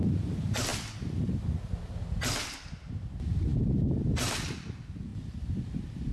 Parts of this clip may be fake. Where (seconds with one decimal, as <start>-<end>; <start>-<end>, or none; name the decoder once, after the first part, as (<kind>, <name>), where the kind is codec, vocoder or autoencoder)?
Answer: none